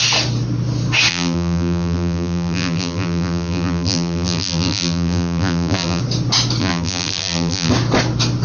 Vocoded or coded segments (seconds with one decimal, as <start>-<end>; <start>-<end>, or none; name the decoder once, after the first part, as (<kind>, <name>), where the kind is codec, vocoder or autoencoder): 1.1-6.0 (vocoder, BigVGAN v2); 6.6-7.7